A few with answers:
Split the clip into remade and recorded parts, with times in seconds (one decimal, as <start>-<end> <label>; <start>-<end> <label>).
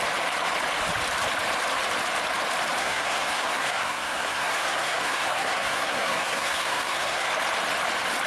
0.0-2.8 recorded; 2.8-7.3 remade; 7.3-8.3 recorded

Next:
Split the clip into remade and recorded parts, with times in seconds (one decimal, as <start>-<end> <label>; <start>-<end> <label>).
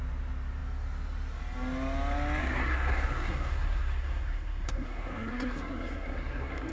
0.0-2.4 recorded; 2.4-6.7 remade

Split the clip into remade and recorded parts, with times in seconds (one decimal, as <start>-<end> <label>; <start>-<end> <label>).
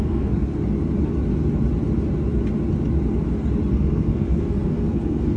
0.0-0.5 remade; 0.5-3.7 recorded; 3.7-5.4 remade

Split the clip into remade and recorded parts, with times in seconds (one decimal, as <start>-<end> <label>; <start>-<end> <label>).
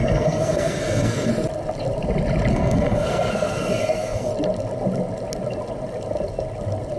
0.0-1.3 remade; 1.3-2.5 recorded; 2.5-4.3 remade; 4.3-7.0 recorded